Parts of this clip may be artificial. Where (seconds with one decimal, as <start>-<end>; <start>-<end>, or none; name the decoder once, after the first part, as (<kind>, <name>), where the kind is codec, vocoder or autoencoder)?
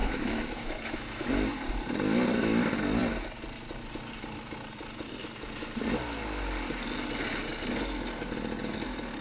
0.0-1.3 (autoencoder, DAC-VAE)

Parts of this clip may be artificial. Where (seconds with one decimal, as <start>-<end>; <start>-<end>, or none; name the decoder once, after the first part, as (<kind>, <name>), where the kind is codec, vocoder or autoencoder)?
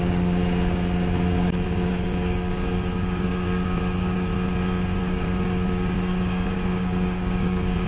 0.0-0.4 (codec, DAC); 1.2-4.3; 5.0-7.9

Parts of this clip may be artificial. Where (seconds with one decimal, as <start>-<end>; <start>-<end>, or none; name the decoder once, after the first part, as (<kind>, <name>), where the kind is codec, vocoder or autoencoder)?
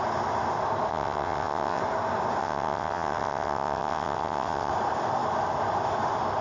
0.9-1.8 (vocoder, WaveNeXt); 2.4-4.7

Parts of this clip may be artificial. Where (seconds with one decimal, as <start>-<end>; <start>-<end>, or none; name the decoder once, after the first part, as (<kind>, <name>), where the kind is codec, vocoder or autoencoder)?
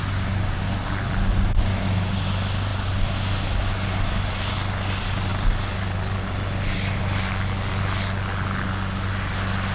none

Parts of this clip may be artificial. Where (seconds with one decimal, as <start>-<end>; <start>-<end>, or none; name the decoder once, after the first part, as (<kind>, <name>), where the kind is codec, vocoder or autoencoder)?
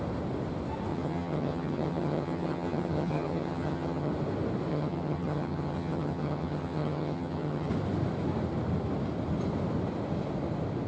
0.9-4.1 (vocoder, HiFi-GAN); 4.7-7.7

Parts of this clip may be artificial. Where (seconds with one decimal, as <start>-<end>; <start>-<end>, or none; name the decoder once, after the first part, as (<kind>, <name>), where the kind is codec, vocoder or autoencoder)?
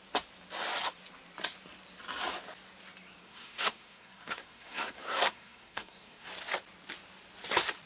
3.2-6.3 (codec, SNAC)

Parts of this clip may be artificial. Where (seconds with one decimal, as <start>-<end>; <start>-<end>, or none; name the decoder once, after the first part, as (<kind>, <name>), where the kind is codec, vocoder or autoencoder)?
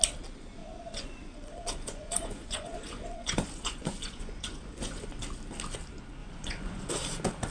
0.6-5.1 (vocoder, Vocos); 6.2-6.9